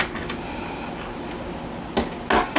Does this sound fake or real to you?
real